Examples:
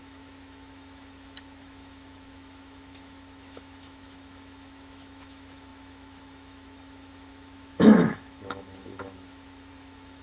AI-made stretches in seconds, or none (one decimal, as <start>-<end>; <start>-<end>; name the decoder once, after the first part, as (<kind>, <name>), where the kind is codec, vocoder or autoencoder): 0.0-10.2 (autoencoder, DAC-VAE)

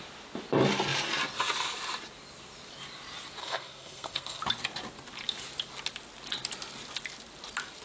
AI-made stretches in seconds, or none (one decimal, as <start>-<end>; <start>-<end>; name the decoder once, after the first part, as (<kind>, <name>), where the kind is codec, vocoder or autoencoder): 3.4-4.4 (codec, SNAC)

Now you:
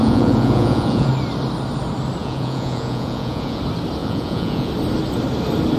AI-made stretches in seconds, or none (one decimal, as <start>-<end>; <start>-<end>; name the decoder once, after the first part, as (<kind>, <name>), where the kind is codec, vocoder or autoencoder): 0.0-1.1 (vocoder, Vocos); 2.2-3.6; 4.0-4.7

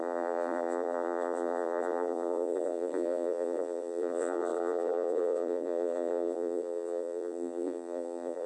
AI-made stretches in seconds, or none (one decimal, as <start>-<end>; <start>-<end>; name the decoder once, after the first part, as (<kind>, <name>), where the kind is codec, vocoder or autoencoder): 0.0-8.5 (vocoder, BigVGAN v2)

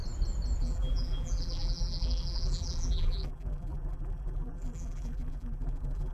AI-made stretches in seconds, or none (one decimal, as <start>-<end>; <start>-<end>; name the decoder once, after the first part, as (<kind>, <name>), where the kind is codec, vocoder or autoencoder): 0.6-6.1 (vocoder, BigVGAN v2)

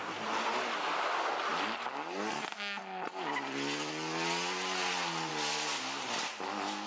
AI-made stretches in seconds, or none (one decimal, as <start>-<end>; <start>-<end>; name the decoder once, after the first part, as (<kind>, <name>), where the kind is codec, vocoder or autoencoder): none

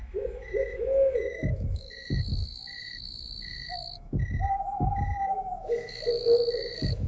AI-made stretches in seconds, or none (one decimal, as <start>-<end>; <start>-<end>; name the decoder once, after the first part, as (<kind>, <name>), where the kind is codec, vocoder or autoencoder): 0.0-7.1 (autoencoder, DAC-VAE)

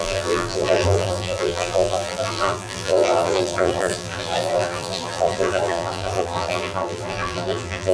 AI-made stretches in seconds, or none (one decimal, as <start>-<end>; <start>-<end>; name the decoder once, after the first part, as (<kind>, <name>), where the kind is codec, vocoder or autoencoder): 0.0-7.9 (vocoder, BigVGAN v2)